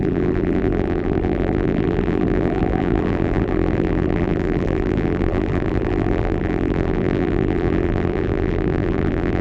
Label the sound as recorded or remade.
remade